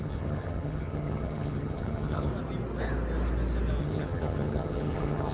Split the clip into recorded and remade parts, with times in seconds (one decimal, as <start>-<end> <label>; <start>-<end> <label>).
0.0-2.3 remade; 2.3-3.8 recorded; 3.8-5.3 remade